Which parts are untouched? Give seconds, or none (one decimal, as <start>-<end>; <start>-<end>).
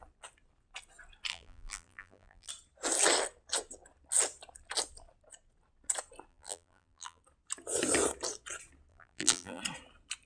0.0-1.3; 2.5-6.3; 7.2-8.9; 9.6-10.3